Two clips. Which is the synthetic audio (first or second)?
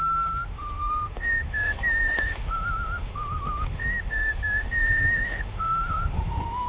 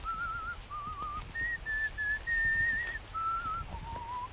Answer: first